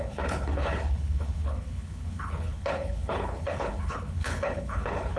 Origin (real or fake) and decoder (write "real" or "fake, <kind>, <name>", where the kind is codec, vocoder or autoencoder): fake, codec, HILCodec